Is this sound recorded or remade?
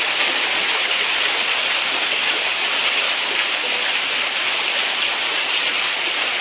recorded